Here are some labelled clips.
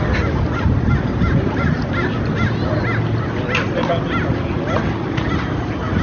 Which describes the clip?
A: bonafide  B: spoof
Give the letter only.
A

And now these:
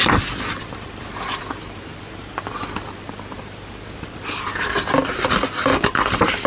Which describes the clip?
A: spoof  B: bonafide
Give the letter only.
B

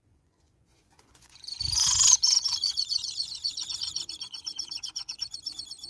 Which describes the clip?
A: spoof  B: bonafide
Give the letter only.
A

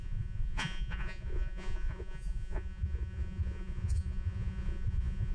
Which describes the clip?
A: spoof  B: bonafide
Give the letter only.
A